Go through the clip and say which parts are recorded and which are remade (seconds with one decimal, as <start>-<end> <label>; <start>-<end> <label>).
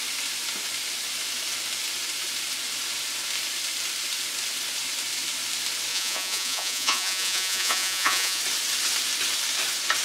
0.0-5.9 recorded; 5.9-8.4 remade; 8.4-10.0 recorded